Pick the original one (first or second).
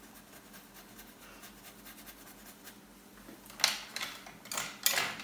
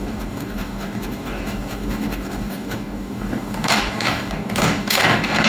first